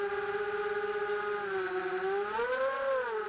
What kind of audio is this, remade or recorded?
recorded